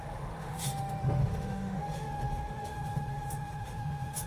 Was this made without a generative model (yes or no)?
no